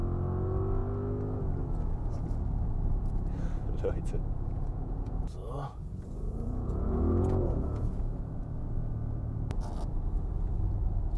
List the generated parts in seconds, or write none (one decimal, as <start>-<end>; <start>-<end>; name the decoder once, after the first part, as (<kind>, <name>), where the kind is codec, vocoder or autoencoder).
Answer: 3.9-8.4 (vocoder, Vocos)

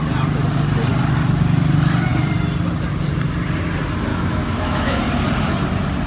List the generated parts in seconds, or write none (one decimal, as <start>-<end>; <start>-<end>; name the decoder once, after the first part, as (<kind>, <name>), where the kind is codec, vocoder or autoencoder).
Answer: 4.1-5.0 (autoencoder, DAC-VAE)